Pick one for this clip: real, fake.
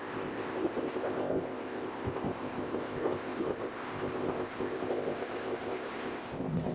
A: fake